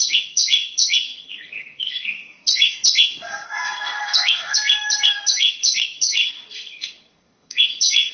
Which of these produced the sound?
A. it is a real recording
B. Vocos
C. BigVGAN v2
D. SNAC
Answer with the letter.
D